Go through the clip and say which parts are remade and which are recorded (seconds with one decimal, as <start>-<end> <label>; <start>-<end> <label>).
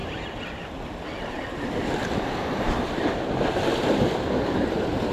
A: 0.0-5.1 recorded